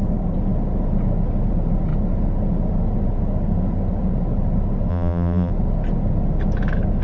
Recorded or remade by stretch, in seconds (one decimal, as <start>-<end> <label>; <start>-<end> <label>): 0.0-4.9 recorded; 4.9-5.5 remade; 5.5-7.0 recorded